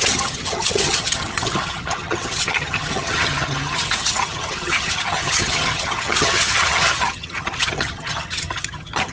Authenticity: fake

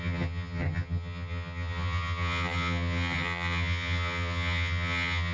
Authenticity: fake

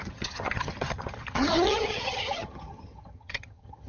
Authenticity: fake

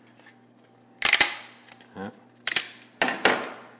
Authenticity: real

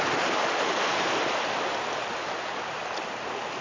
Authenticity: real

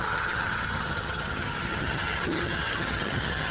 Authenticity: fake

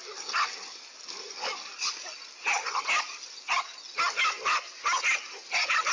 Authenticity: real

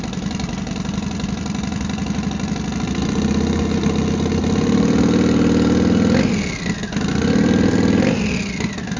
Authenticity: real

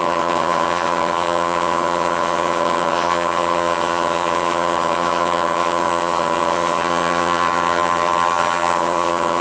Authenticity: fake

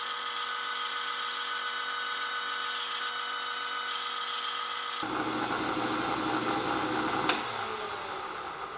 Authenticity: real